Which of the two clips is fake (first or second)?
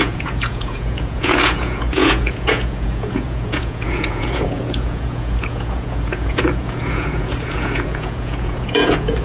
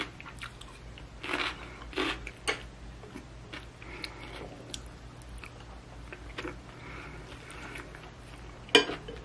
first